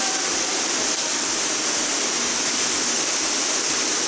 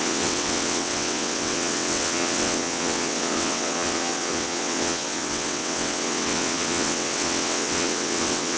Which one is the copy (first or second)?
second